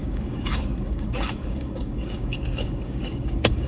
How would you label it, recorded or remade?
remade